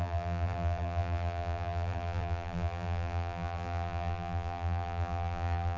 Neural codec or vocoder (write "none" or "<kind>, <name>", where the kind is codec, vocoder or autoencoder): vocoder, BigVGAN v2